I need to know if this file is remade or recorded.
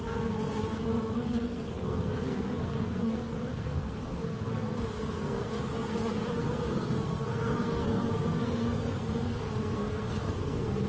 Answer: remade